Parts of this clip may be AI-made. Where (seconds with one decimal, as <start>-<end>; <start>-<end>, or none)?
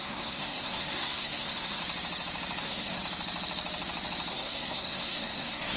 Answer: 0.0-1.8; 2.6-3.0; 4.3-5.8